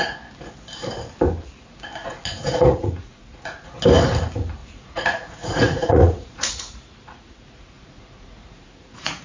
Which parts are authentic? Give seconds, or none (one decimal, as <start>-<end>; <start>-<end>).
0.0-2.0; 3.7-4.6